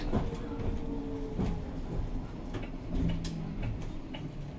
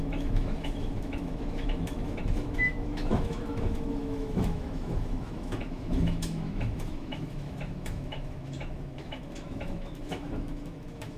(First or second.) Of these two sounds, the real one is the first